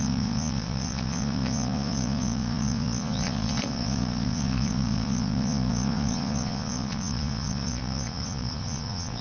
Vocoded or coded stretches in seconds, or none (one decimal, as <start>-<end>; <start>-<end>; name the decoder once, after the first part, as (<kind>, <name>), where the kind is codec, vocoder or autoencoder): 0.0-9.2 (vocoder, Vocos)